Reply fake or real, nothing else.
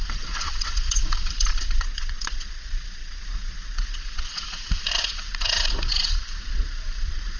fake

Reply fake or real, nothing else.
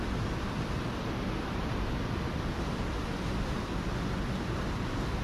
real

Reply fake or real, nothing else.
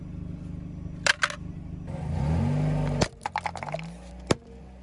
real